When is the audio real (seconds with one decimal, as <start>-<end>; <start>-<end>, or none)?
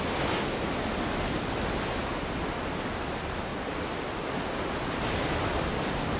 0.0-6.2